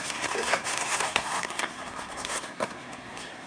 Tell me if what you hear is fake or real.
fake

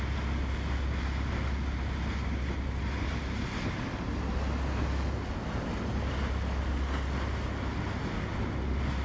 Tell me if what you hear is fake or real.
real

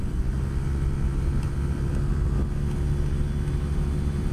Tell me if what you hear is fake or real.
real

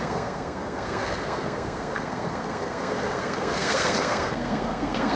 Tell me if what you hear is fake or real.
fake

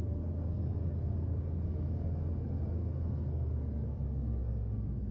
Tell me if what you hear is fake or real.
fake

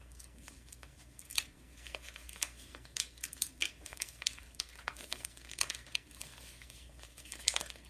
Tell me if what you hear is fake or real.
fake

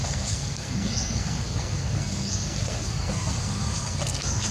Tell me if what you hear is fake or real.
fake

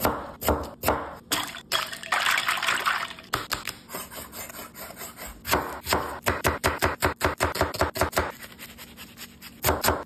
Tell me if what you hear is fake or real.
real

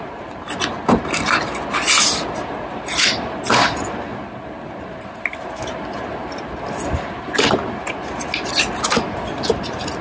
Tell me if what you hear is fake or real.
real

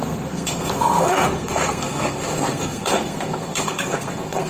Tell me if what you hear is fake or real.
fake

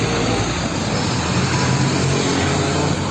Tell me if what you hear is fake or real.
real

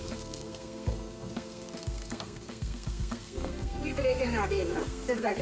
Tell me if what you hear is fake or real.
fake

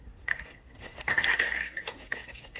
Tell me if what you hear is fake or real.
fake